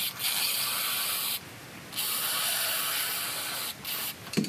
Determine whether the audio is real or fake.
real